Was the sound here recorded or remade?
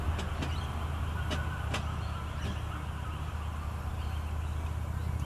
recorded